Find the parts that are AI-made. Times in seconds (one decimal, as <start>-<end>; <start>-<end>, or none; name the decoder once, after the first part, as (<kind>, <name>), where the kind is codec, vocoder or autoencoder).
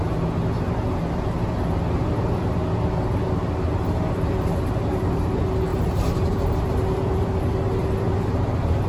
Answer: 5.7-6.5 (vocoder, BigVGAN v2)